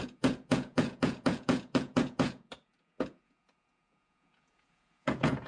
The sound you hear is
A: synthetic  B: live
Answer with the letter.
A